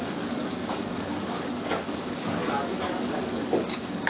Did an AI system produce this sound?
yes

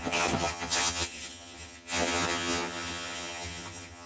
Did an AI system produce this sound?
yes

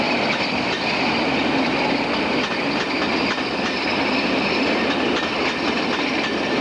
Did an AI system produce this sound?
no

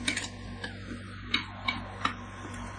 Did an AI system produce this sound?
no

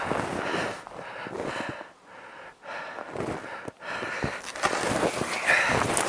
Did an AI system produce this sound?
no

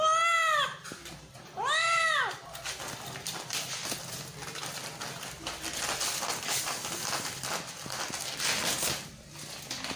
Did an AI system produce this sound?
no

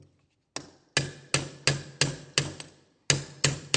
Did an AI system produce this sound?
no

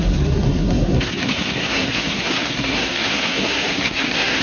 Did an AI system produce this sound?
yes